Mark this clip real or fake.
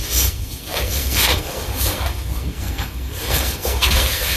fake